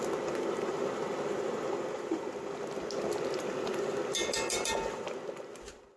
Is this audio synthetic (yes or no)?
no